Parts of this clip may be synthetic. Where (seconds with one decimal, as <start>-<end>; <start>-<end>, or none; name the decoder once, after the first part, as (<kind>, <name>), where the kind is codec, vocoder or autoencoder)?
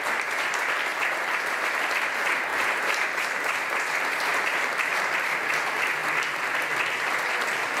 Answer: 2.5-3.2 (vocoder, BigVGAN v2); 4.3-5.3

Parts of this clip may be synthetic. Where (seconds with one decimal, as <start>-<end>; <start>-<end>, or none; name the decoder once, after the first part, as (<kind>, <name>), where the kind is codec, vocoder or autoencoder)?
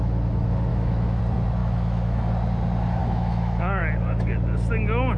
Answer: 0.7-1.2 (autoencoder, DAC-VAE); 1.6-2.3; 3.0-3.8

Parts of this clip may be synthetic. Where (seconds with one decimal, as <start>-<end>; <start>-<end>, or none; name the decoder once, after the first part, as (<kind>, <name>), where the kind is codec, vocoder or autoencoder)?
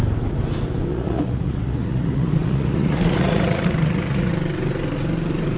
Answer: 0.9-4.3 (vocoder, Vocos)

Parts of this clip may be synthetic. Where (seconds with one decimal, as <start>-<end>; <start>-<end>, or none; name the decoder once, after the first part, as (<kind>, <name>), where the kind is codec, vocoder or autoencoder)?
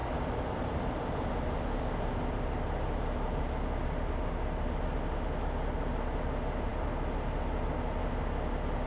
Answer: none